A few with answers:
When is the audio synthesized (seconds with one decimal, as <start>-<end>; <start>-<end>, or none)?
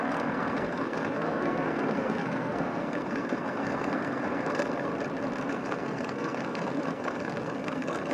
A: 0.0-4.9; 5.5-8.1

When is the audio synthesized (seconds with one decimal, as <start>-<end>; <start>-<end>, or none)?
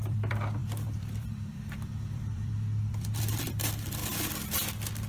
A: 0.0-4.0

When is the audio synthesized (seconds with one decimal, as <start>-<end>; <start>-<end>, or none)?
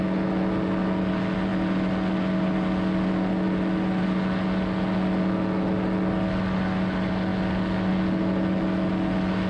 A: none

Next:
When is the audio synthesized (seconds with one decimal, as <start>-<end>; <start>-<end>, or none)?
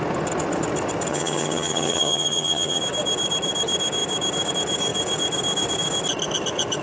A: 1.1-2.8